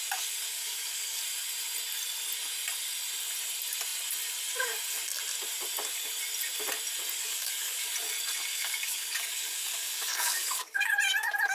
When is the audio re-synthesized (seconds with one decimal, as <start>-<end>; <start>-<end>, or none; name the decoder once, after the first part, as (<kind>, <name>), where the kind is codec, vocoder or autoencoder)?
0.5-1.2 (codec, DAC); 7.2-7.9; 8.5-10.9